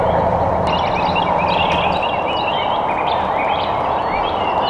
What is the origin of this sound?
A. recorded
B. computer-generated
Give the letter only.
A